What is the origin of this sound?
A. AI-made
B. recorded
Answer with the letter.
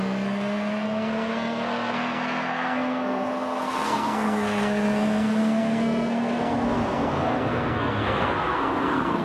A